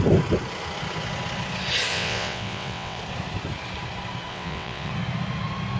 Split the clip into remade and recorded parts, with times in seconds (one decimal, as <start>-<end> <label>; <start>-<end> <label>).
0.0-1.9 recorded; 1.9-3.0 remade; 3.0-4.3 recorded; 4.3-4.9 remade; 4.9-5.8 recorded